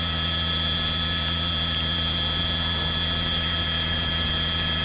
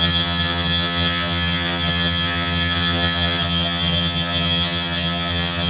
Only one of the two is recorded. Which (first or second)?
first